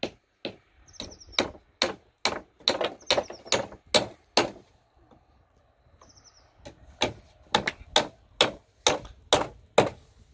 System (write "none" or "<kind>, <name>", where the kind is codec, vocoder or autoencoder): none